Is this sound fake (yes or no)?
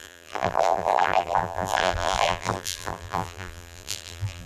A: yes